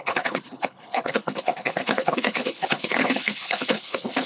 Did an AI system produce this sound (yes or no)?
yes